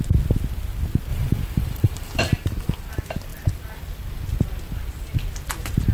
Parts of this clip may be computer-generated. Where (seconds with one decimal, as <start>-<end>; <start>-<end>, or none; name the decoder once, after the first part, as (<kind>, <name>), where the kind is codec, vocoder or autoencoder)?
1.1-2.2 (vocoder, BigVGAN v2)